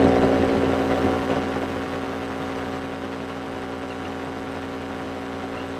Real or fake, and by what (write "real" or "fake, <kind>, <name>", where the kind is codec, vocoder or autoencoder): real